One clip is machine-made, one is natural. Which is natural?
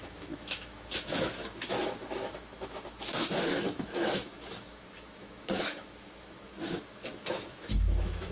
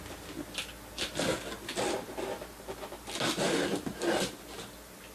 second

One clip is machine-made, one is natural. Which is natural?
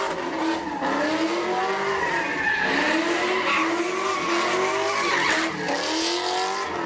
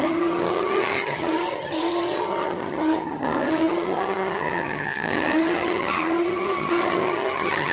first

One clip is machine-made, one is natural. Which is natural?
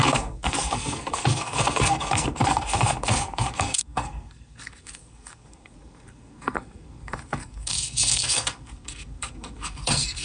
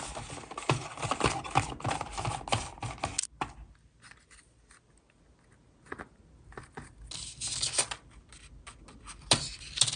second